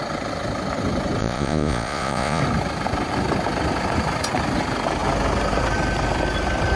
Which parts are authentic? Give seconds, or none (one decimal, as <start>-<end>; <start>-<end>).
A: 0.0-1.2; 2.4-6.8

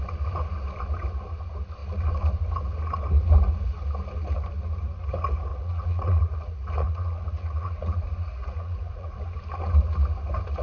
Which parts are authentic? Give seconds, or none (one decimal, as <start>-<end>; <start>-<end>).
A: 0.0-5.5; 9.2-10.6

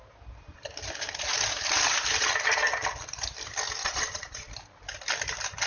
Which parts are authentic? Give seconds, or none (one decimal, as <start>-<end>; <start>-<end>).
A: 0.0-3.8; 4.5-5.7